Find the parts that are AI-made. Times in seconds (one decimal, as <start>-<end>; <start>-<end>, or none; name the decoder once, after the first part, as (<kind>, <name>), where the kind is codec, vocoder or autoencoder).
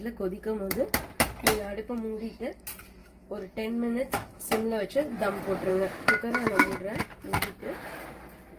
1.5-2.5 (autoencoder, DAC-VAE); 3.0-4.9; 5.7-6.7